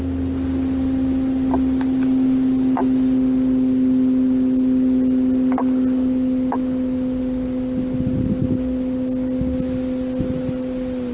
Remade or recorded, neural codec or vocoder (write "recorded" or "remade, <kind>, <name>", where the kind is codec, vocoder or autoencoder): recorded